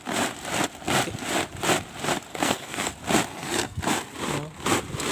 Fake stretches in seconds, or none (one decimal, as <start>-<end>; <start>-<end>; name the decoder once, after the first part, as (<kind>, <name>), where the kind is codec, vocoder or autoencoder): 2.3-2.9 (codec, SNAC); 3.3-3.8